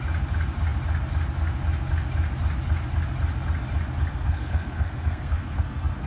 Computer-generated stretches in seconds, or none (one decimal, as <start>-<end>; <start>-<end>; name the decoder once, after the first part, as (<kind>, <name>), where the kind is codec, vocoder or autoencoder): 4.1-6.1 (codec, SNAC)